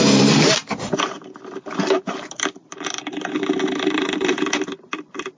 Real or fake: fake